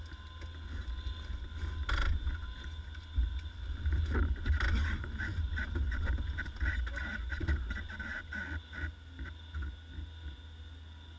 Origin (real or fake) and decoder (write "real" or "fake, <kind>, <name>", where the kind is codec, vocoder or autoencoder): real